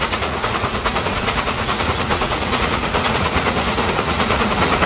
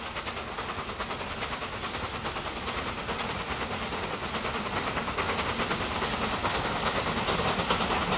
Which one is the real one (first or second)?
second